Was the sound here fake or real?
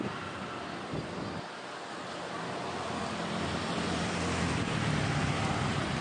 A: fake